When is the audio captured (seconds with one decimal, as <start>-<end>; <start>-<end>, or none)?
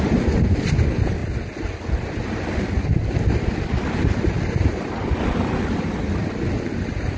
0.0-7.2